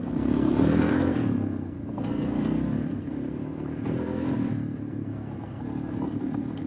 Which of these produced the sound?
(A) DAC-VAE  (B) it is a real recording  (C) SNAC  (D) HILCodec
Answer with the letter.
C